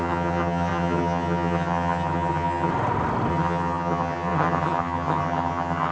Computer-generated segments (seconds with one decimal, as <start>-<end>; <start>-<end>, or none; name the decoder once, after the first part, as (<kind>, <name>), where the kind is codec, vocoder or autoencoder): 0.0-2.7 (vocoder, HiFi-GAN); 3.3-5.9